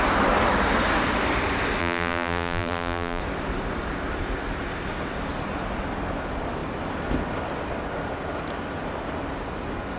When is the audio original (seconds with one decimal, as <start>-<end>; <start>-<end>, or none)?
0.0-1.8; 3.2-10.0